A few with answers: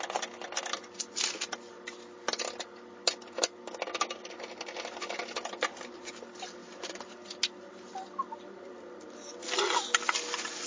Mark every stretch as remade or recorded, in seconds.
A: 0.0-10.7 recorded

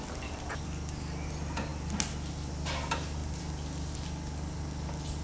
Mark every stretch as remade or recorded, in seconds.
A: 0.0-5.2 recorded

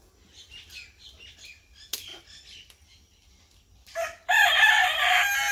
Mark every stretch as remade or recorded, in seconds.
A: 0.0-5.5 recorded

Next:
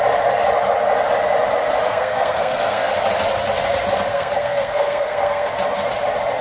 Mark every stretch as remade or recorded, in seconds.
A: 0.0-1.9 recorded; 1.9-2.9 remade; 2.9-4.1 recorded; 4.1-5.5 remade; 5.5-6.4 recorded

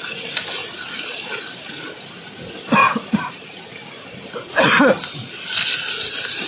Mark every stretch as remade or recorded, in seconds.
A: 0.0-2.8 recorded; 2.8-4.5 remade; 4.5-6.5 recorded

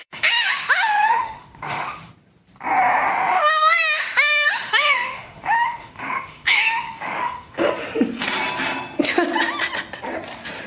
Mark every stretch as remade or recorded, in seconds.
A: 0.0-2.1 remade; 2.1-3.1 recorded; 3.1-7.7 remade; 7.7-10.7 recorded

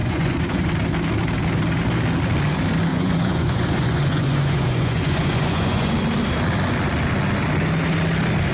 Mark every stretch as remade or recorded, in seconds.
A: 0.0-0.7 remade; 0.7-2.9 recorded; 2.9-5.9 remade; 5.9-8.5 recorded